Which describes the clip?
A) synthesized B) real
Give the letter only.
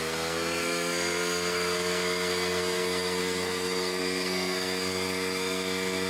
A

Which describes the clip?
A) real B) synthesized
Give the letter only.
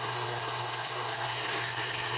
B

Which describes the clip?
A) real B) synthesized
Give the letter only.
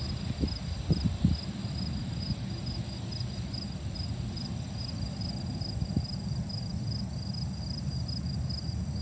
A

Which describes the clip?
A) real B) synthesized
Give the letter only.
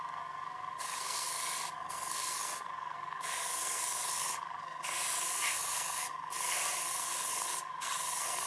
B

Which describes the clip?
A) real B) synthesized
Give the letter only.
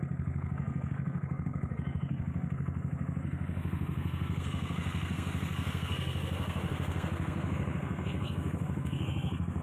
B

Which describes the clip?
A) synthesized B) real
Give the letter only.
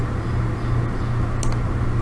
B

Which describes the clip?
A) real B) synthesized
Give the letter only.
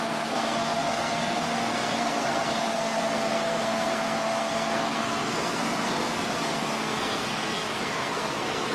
B